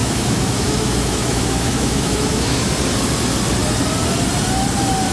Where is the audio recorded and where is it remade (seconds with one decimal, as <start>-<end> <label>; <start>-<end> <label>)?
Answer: 0.0-2.7 remade; 2.7-5.1 recorded